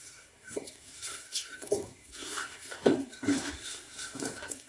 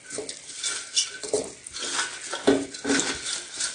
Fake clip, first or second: first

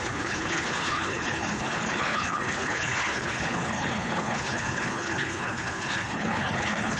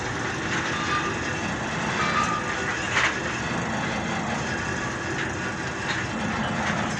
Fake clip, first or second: first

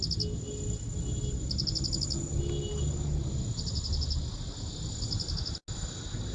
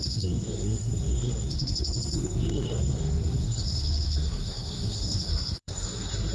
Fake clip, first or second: second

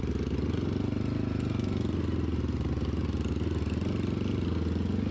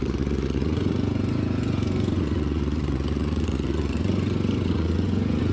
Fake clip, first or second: second